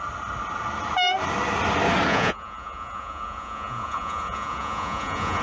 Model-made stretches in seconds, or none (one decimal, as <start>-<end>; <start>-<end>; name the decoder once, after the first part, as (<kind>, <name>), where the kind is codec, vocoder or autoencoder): 2.1-5.4 (vocoder, Vocos)